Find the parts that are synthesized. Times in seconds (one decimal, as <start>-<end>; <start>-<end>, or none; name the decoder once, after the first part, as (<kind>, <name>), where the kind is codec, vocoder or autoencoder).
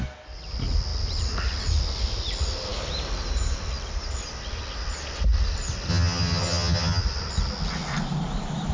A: 5.9-7.0 (vocoder, HiFi-GAN)